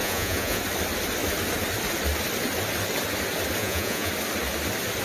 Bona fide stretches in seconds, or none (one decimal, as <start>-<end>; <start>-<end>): 0.6-3.6; 4.1-5.0

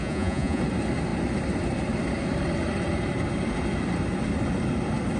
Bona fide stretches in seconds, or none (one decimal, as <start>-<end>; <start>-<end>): 0.6-5.2

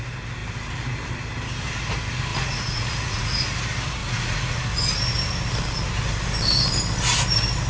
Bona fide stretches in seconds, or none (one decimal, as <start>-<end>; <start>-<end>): 0.0-2.3; 3.3-4.0; 4.6-7.7

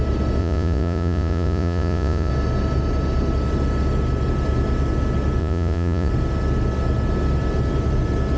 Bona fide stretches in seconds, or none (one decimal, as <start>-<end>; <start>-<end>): 0.0-0.4; 2.3-5.4; 6.1-8.4

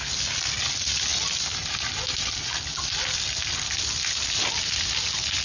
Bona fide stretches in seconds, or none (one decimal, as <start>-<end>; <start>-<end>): 0.0-5.4

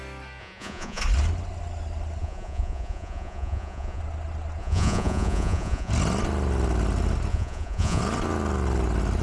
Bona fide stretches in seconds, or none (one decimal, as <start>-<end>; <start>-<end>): 0.0-0.4; 1.0-2.2; 4.0-4.6; 5.9-7.3; 8.0-9.2